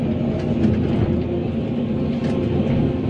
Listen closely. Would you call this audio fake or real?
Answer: real